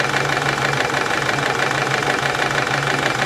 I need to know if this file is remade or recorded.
recorded